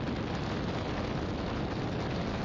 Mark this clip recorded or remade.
recorded